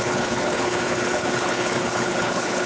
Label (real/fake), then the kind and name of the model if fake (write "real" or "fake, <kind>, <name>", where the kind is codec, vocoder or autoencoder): fake, codec, HILCodec